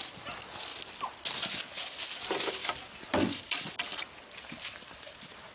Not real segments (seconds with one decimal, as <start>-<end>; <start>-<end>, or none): none